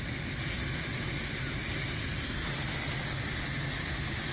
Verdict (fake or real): real